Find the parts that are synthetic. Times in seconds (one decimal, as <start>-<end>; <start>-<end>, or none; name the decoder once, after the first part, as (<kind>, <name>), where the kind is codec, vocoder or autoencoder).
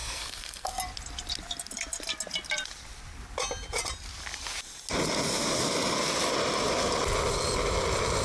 0.0-0.8 (codec, SNAC)